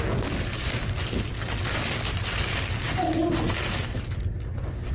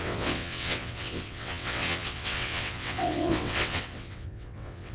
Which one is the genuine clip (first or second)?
first